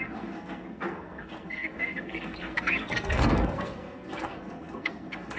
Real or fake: fake